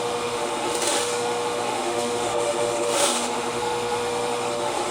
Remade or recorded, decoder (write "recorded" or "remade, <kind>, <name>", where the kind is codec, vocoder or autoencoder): remade, autoencoder, DAC-VAE